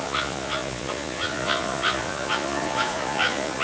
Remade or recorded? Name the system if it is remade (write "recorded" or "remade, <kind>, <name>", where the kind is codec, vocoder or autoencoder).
remade, vocoder, Vocos